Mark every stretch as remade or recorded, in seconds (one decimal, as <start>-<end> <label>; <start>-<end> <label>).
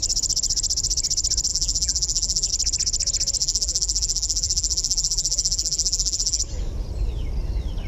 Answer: 0.0-1.5 recorded; 1.5-2.5 remade; 2.5-3.4 recorded; 3.4-6.4 remade; 6.4-7.9 recorded